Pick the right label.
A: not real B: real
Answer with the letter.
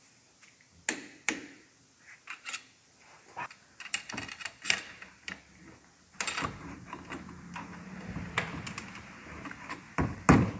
B